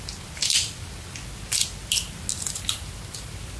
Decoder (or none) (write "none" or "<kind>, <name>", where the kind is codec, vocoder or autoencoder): none